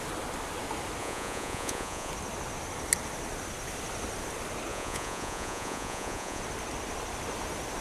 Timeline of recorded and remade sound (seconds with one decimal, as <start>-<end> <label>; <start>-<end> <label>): 0.0-1.0 recorded; 1.0-2.1 remade; 2.1-4.7 recorded; 4.7-6.4 remade; 6.4-7.8 recorded